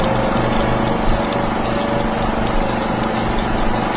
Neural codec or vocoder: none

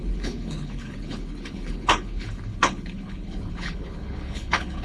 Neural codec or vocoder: codec, HILCodec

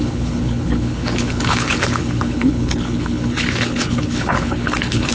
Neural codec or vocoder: codec, HILCodec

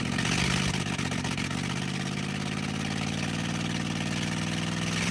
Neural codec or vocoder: none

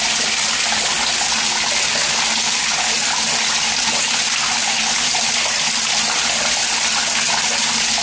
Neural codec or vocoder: none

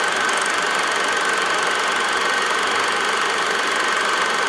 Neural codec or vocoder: none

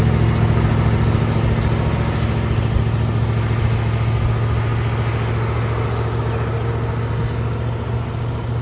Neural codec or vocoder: none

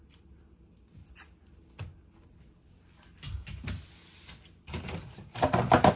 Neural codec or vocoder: none